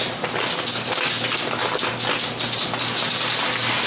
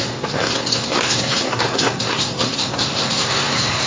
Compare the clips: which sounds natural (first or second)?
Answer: first